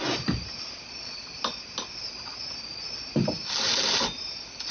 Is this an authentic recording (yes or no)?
yes